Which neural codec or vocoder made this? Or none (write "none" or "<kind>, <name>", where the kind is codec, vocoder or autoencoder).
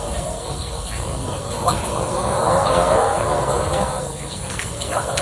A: codec, SNAC